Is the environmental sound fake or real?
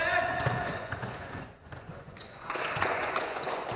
fake